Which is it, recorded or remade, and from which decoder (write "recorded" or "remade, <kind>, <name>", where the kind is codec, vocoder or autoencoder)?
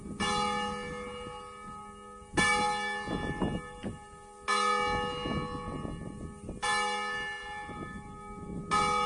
recorded